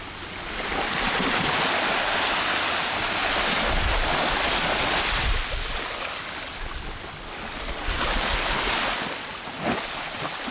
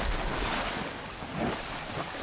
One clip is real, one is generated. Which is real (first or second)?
first